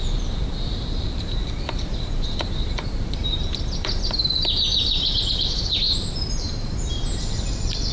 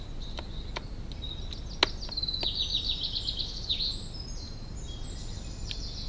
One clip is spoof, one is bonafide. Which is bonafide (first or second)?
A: second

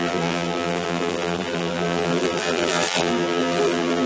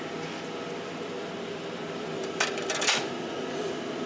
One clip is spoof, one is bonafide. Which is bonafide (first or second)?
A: second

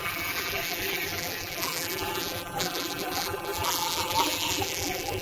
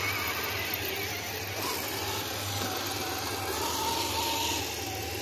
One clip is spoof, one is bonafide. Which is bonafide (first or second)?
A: second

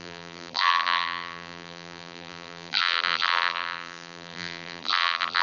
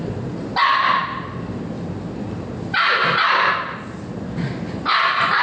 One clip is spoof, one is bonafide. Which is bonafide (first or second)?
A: second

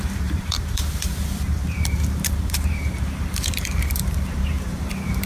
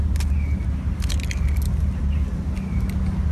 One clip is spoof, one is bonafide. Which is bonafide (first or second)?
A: second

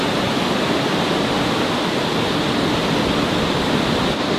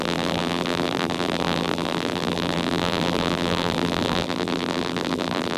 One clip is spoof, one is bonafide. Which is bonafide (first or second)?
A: first